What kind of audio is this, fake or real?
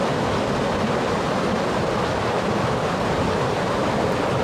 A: real